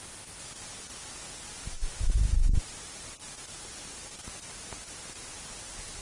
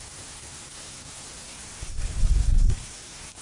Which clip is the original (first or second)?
first